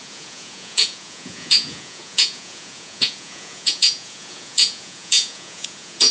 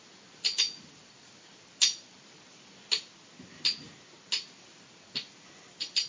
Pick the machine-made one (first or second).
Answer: first